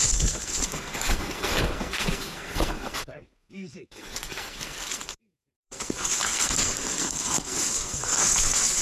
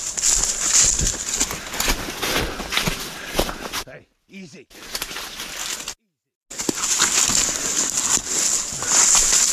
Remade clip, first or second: first